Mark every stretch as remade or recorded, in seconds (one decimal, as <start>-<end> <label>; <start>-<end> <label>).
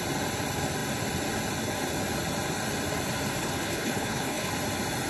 0.0-3.4 recorded; 3.4-4.5 remade; 4.5-5.1 recorded